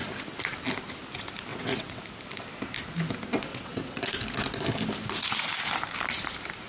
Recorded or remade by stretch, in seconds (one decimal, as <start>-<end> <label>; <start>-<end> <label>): 0.0-1.5 recorded; 1.5-2.0 remade; 2.0-3.5 recorded; 3.5-4.1 remade; 4.1-6.7 recorded